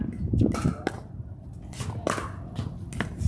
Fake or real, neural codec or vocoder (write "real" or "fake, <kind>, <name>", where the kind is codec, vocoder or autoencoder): real